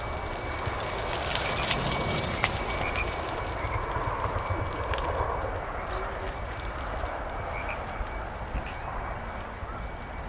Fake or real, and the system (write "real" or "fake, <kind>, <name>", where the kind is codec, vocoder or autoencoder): fake, vocoder, BigVGAN v2